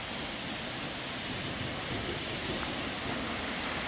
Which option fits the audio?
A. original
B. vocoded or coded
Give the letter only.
A